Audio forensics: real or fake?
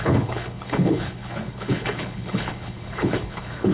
fake